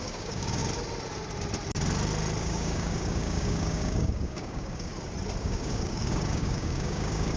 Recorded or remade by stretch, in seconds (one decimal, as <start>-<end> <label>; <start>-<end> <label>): 0.0-0.6 remade; 0.6-2.4 recorded; 2.4-4.9 remade; 4.9-5.4 recorded; 5.4-7.4 remade